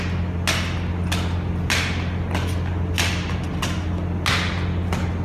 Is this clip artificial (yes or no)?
no